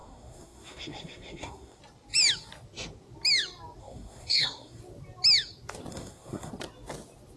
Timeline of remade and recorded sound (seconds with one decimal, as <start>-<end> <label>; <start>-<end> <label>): 0.0-1.8 remade; 1.8-3.8 recorded; 3.8-4.8 remade; 4.8-5.9 recorded; 5.9-6.5 remade; 6.5-7.4 recorded